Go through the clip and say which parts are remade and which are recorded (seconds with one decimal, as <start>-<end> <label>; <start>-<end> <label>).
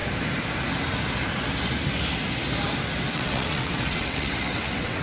0.0-3.0 recorded; 3.0-5.0 remade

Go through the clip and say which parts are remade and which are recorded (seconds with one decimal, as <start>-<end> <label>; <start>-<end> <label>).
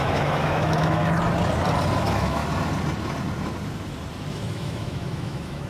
0.0-1.0 remade; 1.0-2.0 recorded; 2.0-2.4 remade; 2.4-4.3 recorded; 4.3-5.7 remade